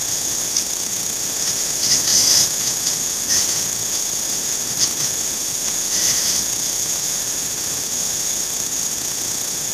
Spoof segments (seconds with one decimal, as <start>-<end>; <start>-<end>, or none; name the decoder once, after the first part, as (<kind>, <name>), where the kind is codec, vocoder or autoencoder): 0.0-9.7 (autoencoder, DAC-VAE)